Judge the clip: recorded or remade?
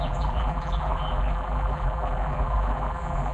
remade